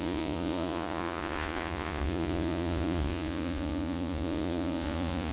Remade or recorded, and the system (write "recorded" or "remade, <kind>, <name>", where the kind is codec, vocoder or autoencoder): remade, vocoder, Vocos